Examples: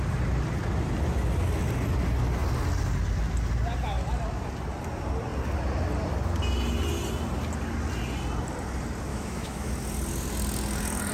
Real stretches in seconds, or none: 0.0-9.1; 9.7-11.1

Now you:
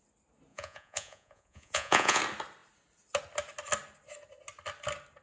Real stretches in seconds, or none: 0.0-0.5; 2.2-5.2

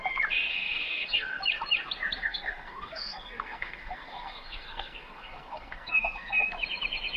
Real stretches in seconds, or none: 0.0-0.5; 1.4-2.2; 6.5-7.2